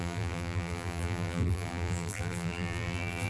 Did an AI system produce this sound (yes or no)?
yes